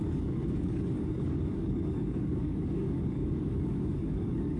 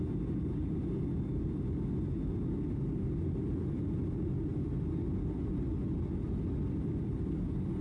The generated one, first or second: first